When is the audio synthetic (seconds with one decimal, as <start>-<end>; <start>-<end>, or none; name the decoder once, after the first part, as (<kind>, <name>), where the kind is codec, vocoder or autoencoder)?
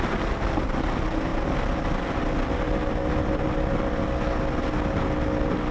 none